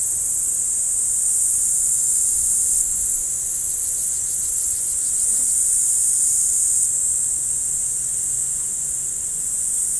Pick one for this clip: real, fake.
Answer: fake